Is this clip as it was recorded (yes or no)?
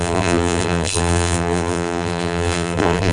no